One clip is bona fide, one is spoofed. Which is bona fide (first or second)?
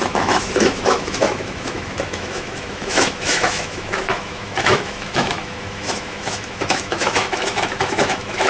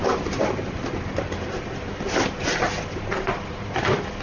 second